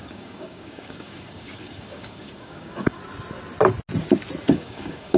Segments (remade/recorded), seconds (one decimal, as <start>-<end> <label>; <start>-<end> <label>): 0.0-3.0 remade; 3.0-4.5 recorded; 4.5-5.2 remade